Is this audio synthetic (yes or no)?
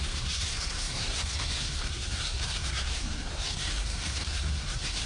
yes